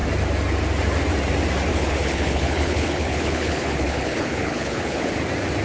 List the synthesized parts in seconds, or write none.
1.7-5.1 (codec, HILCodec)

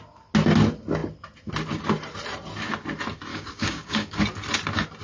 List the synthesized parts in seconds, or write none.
3.3-4.2 (codec, DAC)

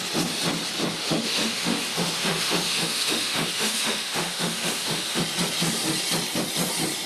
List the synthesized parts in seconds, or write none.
0.9-5.2 (autoencoder, DAC-VAE)

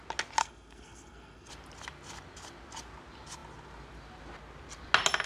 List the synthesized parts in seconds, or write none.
0.4-1.5 (codec, SNAC)